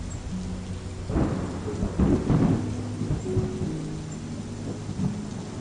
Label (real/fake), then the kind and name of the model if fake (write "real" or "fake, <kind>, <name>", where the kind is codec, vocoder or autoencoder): real